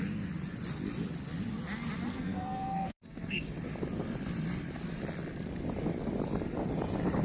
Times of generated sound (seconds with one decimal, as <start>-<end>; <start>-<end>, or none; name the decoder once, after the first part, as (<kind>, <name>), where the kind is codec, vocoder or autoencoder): 2.1-3.4 (codec, SNAC)